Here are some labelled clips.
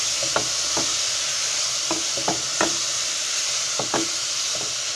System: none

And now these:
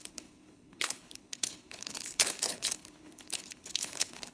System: codec, HILCodec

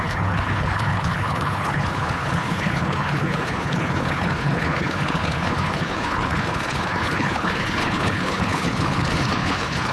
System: codec, HILCodec